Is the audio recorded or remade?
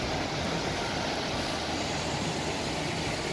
recorded